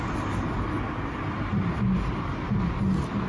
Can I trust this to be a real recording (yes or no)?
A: yes